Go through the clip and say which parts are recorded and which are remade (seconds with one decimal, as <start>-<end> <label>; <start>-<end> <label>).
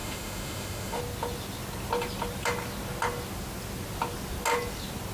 0.0-1.0 remade; 1.0-5.1 recorded